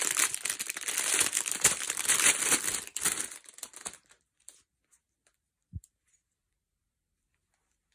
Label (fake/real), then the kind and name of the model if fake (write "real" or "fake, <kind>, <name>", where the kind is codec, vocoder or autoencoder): fake, vocoder, BigVGAN v2